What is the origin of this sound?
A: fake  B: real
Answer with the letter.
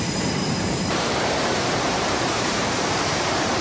A